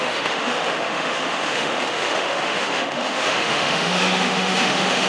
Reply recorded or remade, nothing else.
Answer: remade